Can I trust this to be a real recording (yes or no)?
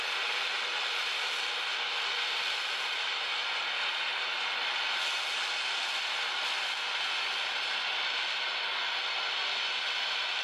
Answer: yes